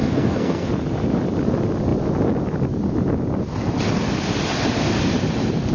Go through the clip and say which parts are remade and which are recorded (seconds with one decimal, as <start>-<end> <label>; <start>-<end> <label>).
0.0-0.7 remade; 0.7-5.7 recorded